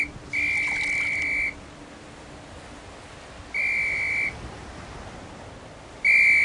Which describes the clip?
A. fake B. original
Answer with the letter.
B